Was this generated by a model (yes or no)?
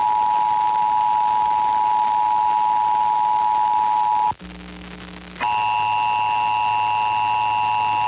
no